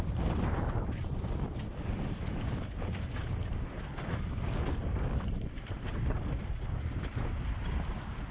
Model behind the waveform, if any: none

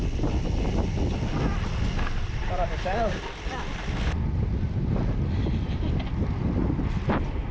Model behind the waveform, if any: none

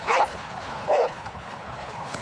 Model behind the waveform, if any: codec, HILCodec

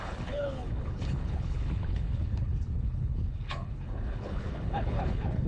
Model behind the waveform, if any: codec, HILCodec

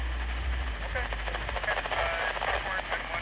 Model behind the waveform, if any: none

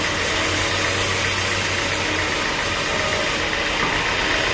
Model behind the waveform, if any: none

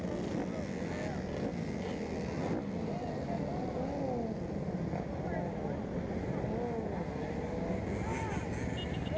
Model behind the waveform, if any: none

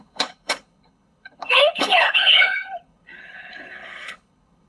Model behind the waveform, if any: codec, HILCodec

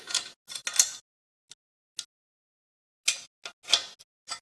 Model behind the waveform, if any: none